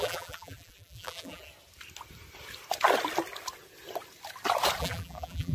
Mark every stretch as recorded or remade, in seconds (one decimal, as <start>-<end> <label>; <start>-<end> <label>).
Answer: 0.0-1.5 remade; 1.5-4.8 recorded; 4.8-5.5 remade